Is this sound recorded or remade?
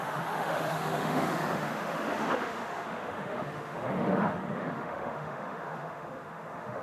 remade